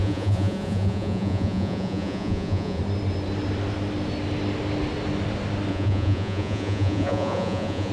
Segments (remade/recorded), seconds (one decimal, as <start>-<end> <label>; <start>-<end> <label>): 0.0-2.8 remade; 2.8-5.7 recorded; 5.7-7.9 remade